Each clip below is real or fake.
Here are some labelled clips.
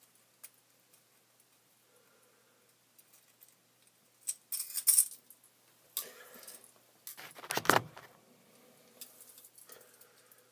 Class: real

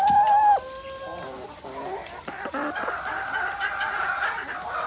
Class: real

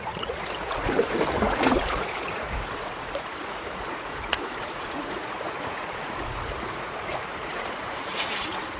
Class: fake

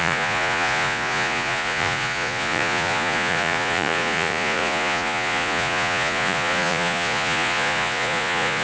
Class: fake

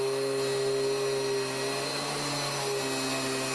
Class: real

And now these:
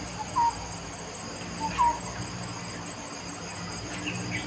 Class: real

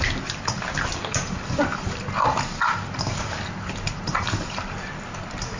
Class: real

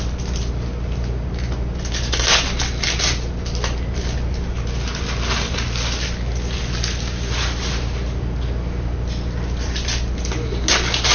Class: real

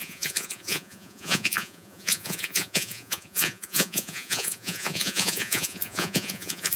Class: fake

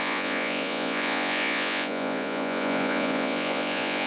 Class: fake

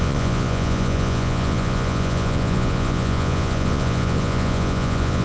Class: fake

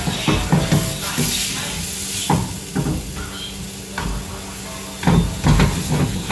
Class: real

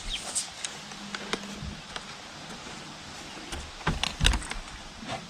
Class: real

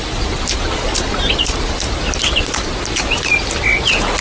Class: real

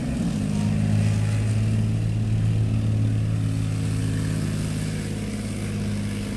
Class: real